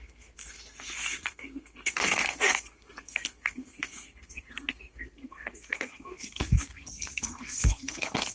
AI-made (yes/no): yes